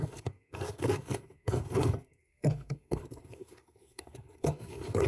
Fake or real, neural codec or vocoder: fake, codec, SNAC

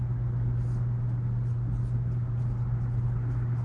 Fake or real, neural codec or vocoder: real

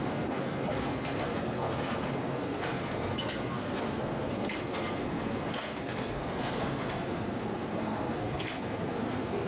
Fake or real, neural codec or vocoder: fake, codec, SNAC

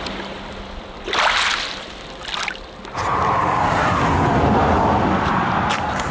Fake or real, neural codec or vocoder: real